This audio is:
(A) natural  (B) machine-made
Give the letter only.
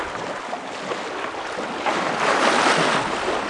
A